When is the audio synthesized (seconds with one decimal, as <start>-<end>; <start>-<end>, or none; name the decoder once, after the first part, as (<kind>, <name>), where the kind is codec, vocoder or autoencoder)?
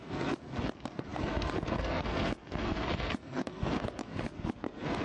0.0-5.0 (codec, SNAC)